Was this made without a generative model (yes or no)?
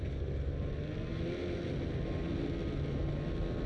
yes